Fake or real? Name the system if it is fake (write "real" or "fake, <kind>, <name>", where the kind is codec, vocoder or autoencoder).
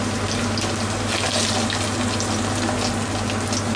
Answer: real